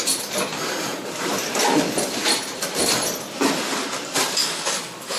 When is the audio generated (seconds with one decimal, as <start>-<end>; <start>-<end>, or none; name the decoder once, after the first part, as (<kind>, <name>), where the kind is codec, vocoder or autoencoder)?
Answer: 4.4-5.2 (codec, DAC)